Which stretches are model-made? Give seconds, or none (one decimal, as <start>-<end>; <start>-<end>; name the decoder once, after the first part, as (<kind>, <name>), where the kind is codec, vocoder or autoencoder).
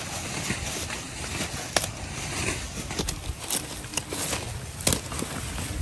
none